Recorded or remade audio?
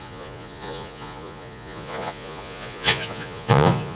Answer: remade